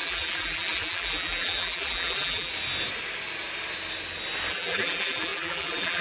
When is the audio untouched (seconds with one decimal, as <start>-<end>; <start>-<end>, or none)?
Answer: 2.5-4.5